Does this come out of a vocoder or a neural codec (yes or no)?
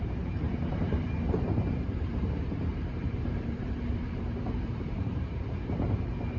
yes